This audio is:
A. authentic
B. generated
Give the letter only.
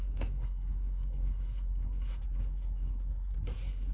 B